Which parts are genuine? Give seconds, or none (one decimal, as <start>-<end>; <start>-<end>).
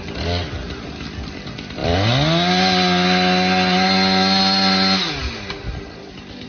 0.0-6.5